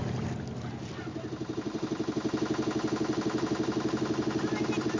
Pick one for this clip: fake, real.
real